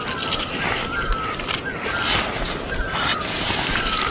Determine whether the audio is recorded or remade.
recorded